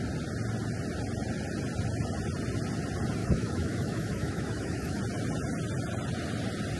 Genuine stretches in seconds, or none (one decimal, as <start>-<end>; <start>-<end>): 0.0-3.2; 5.0-6.8